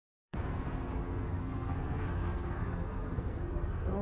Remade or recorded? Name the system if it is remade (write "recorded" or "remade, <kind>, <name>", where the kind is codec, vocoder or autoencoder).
remade, codec, SNAC